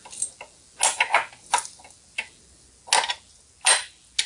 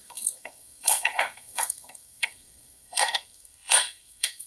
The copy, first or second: second